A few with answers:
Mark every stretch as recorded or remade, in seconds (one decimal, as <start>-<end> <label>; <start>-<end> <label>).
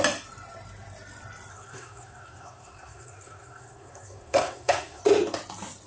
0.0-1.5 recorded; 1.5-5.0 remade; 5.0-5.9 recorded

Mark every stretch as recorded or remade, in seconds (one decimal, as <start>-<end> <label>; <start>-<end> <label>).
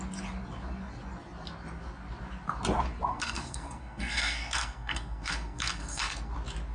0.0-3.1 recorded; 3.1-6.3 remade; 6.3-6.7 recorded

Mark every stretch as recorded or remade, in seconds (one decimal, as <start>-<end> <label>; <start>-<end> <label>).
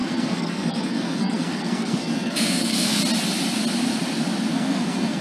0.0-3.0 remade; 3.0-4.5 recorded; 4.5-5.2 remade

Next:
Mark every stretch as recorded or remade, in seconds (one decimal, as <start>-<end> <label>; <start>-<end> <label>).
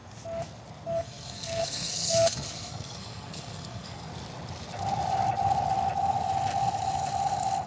0.0-0.9 recorded; 0.9-4.1 remade; 4.1-7.7 recorded